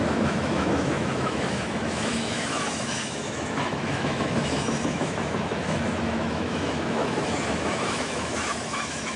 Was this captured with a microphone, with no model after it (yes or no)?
no